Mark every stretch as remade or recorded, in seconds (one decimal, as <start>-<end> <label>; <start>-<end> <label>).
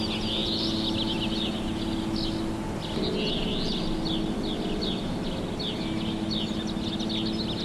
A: 0.0-7.6 recorded